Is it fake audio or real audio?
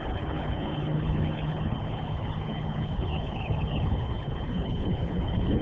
fake